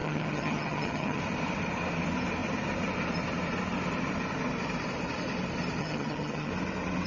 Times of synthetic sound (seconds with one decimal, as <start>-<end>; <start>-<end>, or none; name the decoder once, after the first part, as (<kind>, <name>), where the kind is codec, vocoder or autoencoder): 0.0-1.2 (vocoder, HiFi-GAN); 5.8-6.5